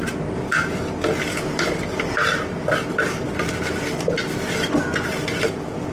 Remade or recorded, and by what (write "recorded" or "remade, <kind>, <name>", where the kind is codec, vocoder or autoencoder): recorded